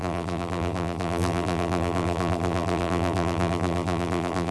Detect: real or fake fake